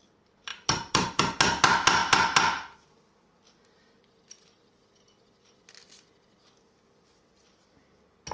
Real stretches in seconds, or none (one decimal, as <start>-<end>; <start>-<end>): 0.0-0.5; 1.2-8.3